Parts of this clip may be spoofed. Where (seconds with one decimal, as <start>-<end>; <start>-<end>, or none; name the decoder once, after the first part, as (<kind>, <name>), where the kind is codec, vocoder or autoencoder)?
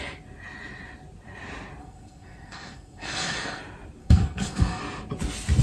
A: 1.8-3.6 (codec, SNAC); 4.0-4.8